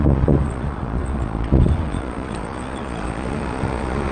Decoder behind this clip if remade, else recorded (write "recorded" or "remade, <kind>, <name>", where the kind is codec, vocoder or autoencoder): remade, vocoder, Vocos